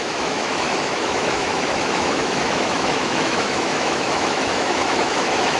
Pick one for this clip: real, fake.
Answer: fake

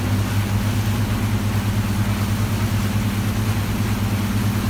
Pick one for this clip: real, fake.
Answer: real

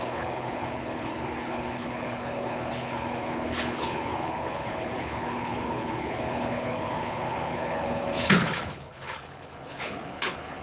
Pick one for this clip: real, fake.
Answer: fake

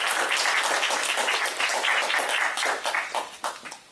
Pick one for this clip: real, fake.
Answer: real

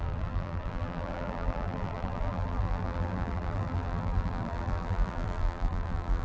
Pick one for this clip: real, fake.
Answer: fake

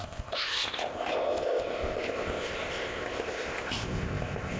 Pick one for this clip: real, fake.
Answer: fake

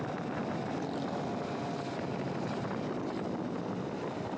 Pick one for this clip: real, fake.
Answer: fake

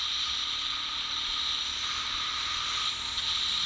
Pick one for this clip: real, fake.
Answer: real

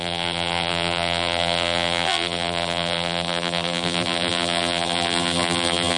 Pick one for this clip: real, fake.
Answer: fake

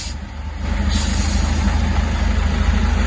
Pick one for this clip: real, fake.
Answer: real